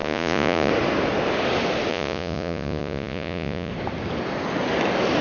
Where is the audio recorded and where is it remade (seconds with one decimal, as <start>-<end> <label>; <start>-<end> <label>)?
0.0-0.7 remade; 0.7-1.9 recorded; 1.9-3.7 remade; 3.7-5.2 recorded